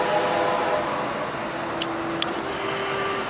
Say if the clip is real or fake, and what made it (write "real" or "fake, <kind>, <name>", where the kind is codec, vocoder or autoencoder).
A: real